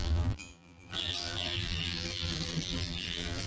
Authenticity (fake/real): fake